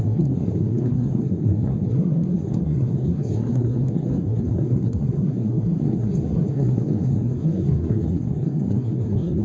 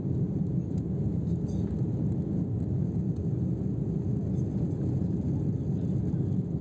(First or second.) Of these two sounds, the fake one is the first